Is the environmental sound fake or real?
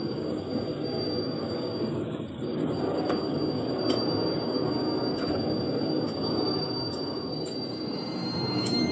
fake